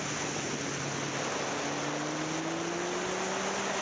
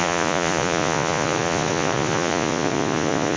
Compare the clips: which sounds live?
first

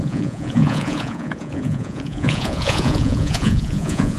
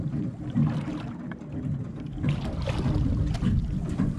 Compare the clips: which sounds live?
second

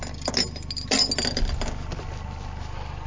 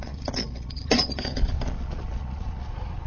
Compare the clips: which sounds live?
first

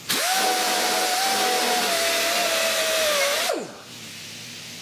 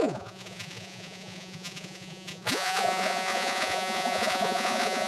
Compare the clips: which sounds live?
first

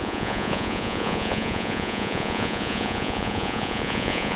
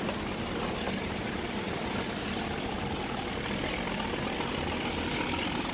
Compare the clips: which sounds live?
second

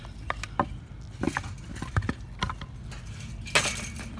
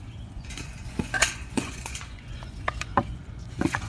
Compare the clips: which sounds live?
first